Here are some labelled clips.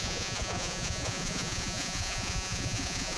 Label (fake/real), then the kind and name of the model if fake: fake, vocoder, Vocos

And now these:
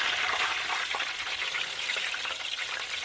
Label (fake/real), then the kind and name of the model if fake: real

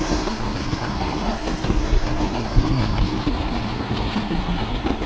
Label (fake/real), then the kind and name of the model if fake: fake, codec, SNAC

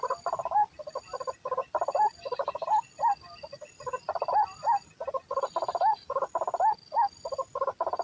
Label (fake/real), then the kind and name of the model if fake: real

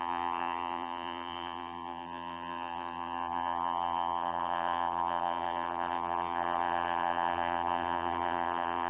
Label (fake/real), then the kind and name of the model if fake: fake, vocoder, BigVGAN v2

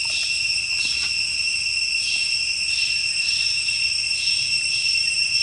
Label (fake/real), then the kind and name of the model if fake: real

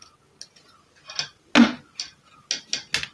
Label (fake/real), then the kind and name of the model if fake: real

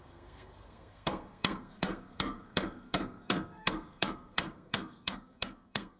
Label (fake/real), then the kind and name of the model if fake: fake, codec, SNAC